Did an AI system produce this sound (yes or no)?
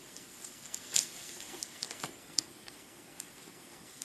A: yes